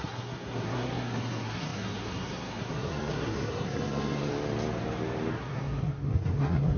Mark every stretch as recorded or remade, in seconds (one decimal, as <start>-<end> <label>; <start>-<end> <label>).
0.0-4.3 remade; 4.3-5.3 recorded; 5.3-6.8 remade